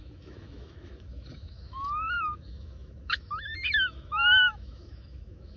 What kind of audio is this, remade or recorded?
remade